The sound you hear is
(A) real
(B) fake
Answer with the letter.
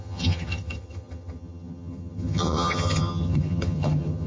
B